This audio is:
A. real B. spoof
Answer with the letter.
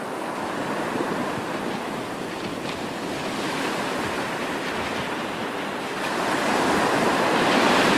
A